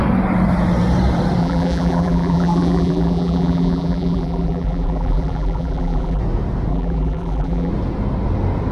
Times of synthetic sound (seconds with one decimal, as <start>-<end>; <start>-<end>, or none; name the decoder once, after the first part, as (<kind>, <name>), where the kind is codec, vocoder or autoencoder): 1.4-6.2 (vocoder, BigVGAN v2); 6.7-7.7

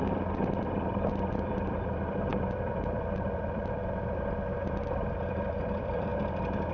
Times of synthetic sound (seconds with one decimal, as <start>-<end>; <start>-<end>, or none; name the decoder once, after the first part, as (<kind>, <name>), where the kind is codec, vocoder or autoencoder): 0.0-6.1 (vocoder, BigVGAN v2)

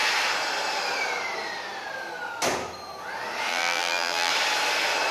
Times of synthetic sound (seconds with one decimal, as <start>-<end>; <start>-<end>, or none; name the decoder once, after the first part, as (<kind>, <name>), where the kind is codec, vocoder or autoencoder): 3.5-4.3 (vocoder, BigVGAN v2)

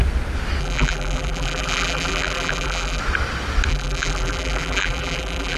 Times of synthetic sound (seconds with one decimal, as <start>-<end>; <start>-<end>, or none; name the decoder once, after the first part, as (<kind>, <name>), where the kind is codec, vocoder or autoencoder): 0.6-3.0 (vocoder, BigVGAN v2); 3.7-5.6